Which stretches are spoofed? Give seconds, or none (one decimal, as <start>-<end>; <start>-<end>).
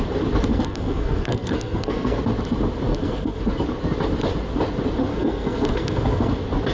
0.5-2.2; 2.9-3.4; 5.1-6.3